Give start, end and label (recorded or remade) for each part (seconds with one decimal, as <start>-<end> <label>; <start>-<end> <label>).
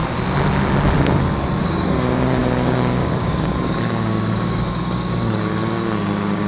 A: 0.0-1.6 recorded; 1.6-6.5 remade